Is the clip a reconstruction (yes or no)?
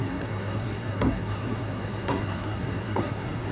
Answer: yes